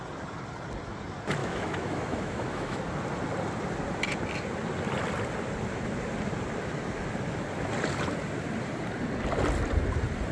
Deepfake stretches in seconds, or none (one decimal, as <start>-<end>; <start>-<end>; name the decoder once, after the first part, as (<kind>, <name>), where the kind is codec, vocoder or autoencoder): 1.4-2.8 (autoencoder, DAC-VAE)